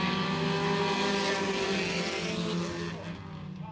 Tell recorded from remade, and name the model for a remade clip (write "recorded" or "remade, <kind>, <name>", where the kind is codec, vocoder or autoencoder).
recorded